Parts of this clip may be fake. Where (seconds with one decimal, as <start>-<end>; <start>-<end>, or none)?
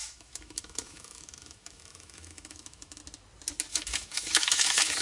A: 0.0-3.0; 3.7-5.0